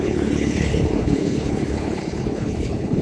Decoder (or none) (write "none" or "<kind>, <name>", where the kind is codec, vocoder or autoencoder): codec, HILCodec